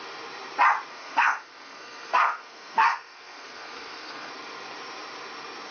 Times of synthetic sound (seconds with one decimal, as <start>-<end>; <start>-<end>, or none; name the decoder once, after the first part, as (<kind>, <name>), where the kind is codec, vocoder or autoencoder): 0.9-4.3 (codec, SNAC)